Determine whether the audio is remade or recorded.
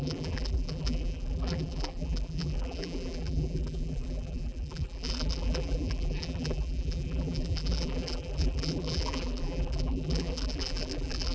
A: remade